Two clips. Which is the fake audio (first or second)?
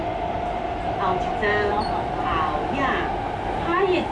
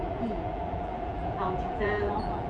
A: second